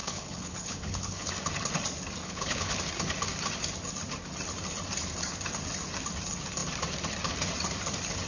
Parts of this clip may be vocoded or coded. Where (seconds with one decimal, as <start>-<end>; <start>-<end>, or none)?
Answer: 0.0-1.3; 2.2-2.8